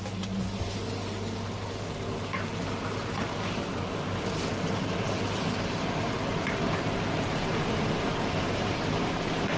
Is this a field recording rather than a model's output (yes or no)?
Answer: no